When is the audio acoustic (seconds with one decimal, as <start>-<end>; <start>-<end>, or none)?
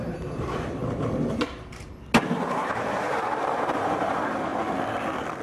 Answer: 0.8-2.4; 4.5-5.4